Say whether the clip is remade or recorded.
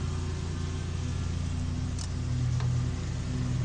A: recorded